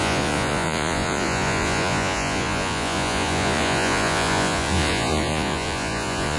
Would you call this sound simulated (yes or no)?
yes